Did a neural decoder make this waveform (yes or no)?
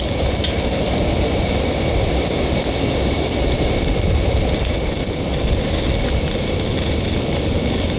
no